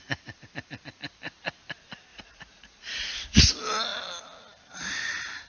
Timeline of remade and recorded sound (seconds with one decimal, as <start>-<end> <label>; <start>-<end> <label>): 0.0-2.1 recorded; 2.1-3.4 remade; 3.4-5.5 recorded